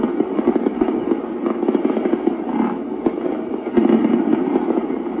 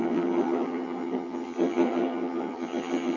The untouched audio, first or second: first